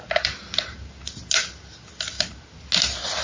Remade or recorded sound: recorded